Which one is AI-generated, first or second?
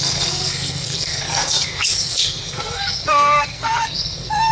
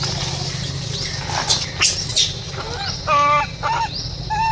first